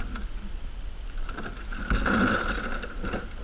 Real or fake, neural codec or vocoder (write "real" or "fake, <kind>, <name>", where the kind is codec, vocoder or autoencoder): real